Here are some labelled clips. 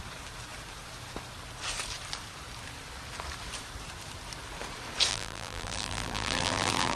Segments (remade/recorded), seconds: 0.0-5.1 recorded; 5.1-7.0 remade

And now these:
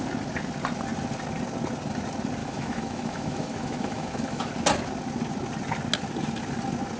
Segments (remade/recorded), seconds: 0.0-2.4 recorded; 2.4-4.5 remade; 4.5-7.0 recorded

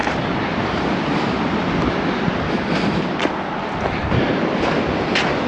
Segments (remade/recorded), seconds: 0.0-3.3 remade; 3.3-5.5 recorded

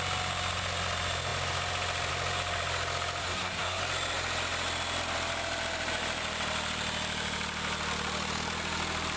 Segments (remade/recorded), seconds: 0.0-3.2 recorded; 3.2-3.8 remade; 3.8-9.2 recorded

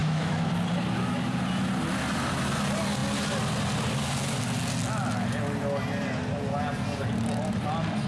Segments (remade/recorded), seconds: 0.0-0.5 remade; 0.5-8.1 recorded